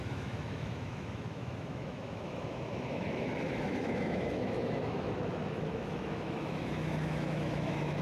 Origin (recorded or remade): remade